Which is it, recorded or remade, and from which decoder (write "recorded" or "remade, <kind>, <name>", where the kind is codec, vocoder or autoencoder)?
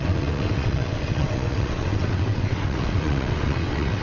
remade, vocoder, WaveNeXt